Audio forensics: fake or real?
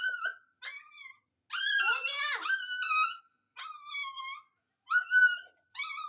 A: real